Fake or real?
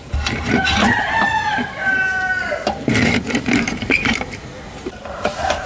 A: fake